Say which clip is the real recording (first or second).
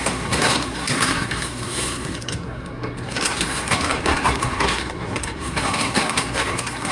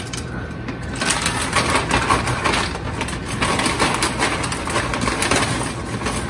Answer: second